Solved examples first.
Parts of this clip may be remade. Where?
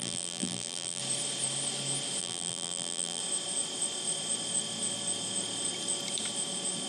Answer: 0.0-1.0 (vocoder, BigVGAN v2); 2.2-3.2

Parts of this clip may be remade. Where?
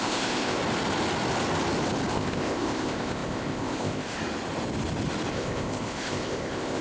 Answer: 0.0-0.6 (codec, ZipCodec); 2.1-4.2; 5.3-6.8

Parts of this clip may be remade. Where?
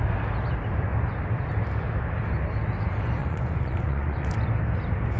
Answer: 3.2-4.3 (vocoder, Vocos)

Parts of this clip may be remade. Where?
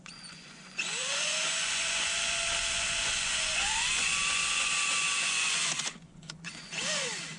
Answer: 0.0-7.4 (vocoder, Vocos)